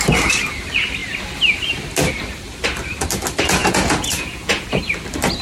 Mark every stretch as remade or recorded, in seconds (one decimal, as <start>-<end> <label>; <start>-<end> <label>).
0.0-3.6 recorded; 3.6-4.8 remade; 4.8-5.4 recorded